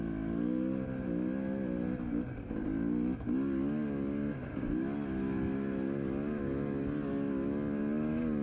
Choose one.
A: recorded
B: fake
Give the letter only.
A